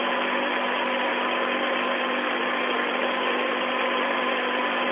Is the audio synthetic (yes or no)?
no